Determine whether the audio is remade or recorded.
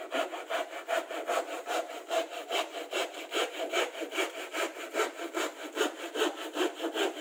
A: remade